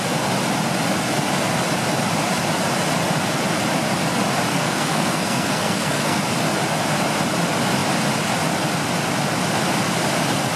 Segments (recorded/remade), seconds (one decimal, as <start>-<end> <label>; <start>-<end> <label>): 0.0-4.5 recorded; 4.5-6.2 remade; 6.2-10.6 recorded